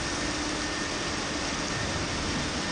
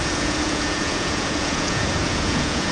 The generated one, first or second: second